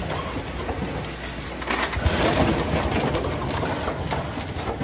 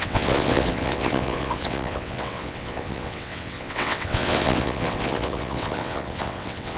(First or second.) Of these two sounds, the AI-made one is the second